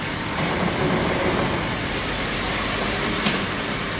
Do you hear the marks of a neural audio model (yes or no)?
yes